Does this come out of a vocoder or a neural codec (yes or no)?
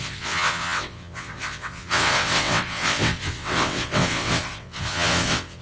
yes